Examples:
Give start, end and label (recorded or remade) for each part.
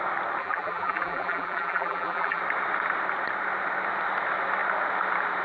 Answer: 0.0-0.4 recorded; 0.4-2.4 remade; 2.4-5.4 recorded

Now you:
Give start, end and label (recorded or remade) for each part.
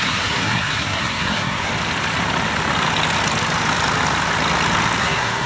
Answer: 0.0-1.7 remade; 1.7-5.0 recorded; 5.0-5.5 remade